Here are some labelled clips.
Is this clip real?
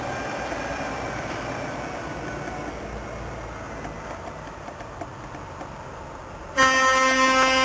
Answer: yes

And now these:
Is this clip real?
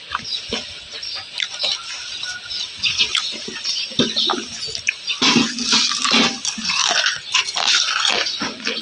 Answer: yes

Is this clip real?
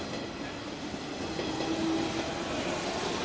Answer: yes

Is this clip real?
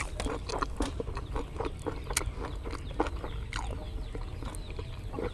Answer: yes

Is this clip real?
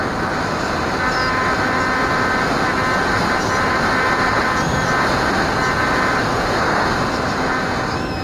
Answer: yes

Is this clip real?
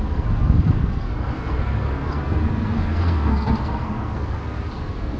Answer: no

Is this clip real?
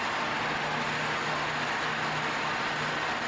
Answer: yes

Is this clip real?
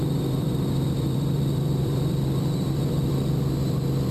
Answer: no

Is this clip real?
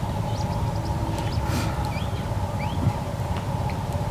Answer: yes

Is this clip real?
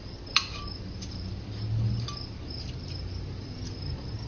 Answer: no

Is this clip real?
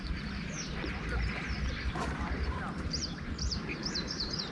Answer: no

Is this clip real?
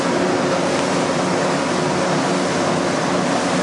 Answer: yes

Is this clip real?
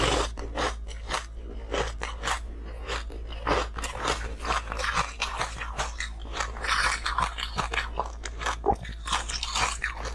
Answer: yes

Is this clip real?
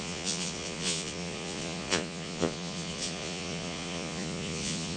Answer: no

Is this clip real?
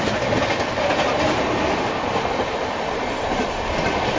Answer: yes